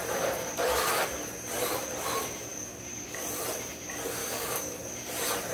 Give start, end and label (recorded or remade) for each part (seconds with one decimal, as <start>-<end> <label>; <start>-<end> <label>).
0.0-2.5 recorded; 2.5-3.2 remade; 3.2-4.2 recorded; 4.2-4.8 remade; 4.8-5.5 recorded